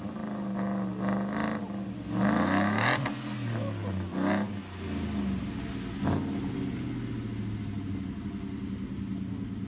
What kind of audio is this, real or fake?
real